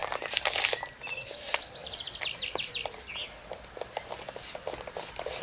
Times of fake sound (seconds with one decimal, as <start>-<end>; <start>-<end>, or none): 0.0-5.4